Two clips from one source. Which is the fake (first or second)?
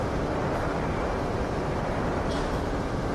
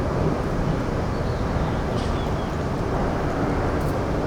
first